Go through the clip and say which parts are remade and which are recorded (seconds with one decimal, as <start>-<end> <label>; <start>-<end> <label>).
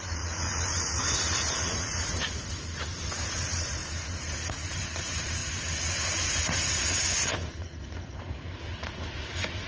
0.0-9.7 remade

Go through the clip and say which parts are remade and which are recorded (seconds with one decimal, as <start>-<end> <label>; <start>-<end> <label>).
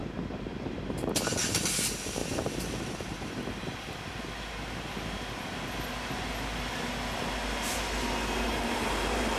0.0-1.1 remade; 1.1-2.2 recorded; 2.2-3.4 remade; 3.4-8.5 recorded; 8.5-9.4 remade